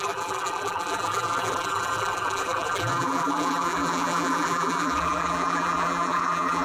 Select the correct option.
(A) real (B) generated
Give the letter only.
B